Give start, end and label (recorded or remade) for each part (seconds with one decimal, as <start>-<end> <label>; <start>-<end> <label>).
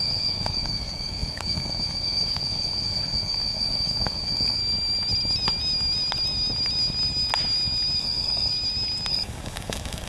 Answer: 0.0-4.6 remade; 4.6-8.0 recorded; 8.0-8.5 remade; 8.5-9.1 recorded; 9.1-10.1 remade